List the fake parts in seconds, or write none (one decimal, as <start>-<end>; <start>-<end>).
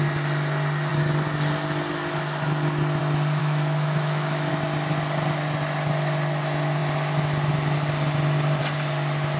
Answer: 3.4-4.5